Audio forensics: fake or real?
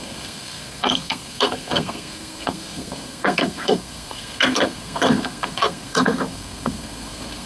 fake